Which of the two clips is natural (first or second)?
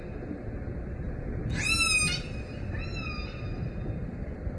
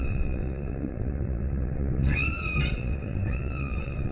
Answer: first